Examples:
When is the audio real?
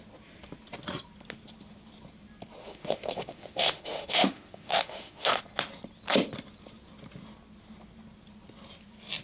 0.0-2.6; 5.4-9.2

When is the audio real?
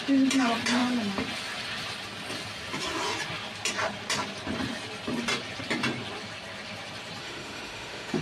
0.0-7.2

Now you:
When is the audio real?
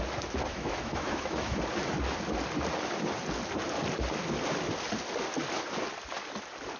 0.0-0.5; 1.6-6.8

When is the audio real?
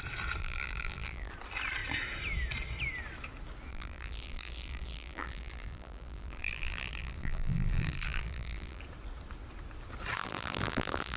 0.0-0.4; 1.3-3.7; 8.8-10.2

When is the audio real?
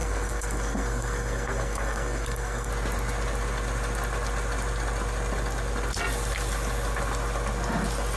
2.7-8.2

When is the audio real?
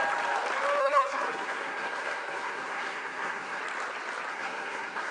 0.0-0.8; 3.6-4.3